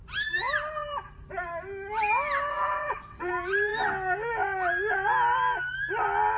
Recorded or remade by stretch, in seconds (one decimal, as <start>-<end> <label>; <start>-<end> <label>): 0.0-2.5 recorded; 2.5-3.3 remade; 3.3-6.4 recorded